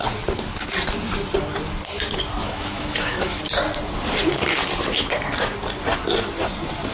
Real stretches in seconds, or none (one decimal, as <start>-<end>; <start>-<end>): 0.0-2.4; 3.4-6.9